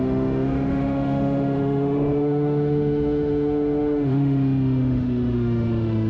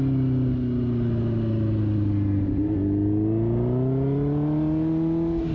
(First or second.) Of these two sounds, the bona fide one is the second